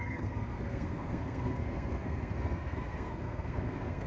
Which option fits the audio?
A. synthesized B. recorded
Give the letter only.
A